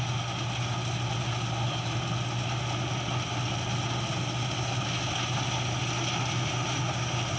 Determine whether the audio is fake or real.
real